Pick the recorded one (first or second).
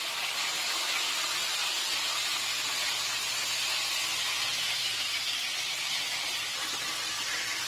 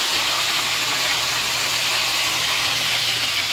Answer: first